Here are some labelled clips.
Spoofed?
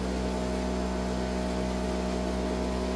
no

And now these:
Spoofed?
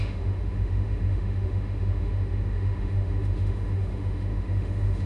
yes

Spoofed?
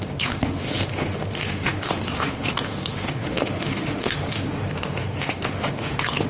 yes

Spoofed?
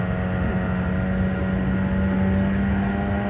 no